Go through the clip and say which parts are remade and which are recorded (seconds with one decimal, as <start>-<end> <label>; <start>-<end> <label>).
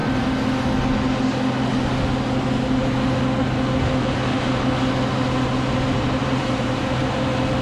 0.0-6.2 recorded; 6.2-7.0 remade; 7.0-7.6 recorded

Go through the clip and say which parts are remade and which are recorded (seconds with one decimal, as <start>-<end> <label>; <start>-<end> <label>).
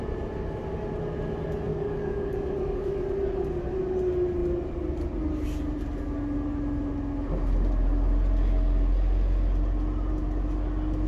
0.0-1.7 recorded; 1.7-3.0 remade; 3.0-11.1 recorded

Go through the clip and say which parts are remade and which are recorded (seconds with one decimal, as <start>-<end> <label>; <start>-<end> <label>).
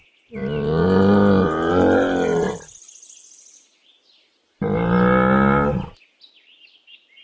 0.0-7.2 recorded